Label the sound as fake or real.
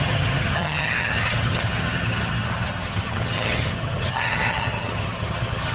fake